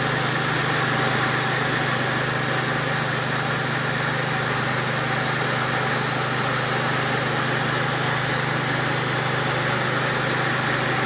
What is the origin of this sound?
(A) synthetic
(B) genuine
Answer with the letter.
B